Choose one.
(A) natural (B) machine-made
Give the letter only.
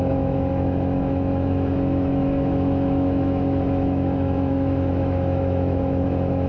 B